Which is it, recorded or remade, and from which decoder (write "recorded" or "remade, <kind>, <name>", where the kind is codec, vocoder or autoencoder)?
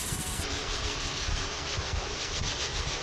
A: remade, codec, SNAC